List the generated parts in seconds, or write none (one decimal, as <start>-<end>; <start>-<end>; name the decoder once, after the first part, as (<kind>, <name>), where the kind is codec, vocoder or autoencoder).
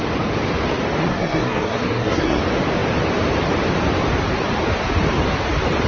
1.0-2.4 (codec, SNAC)